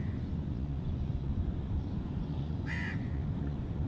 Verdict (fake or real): fake